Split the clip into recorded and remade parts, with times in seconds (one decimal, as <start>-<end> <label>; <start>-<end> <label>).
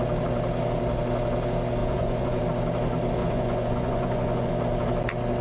0.0-1.8 recorded; 1.8-2.4 remade; 2.4-3.2 recorded; 3.2-4.5 remade; 4.5-5.4 recorded